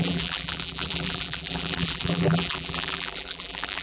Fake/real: fake